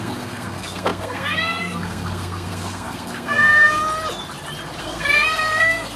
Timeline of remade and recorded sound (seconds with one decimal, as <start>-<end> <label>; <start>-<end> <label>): 0.0-3.8 remade; 3.8-4.8 recorded; 4.8-6.0 remade